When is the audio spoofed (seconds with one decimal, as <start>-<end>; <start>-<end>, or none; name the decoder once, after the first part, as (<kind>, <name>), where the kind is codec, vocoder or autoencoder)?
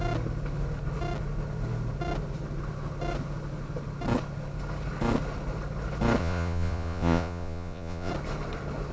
6.2-8.1 (vocoder, Vocos)